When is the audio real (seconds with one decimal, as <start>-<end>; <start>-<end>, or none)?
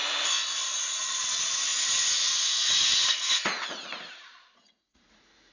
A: 0.0-0.7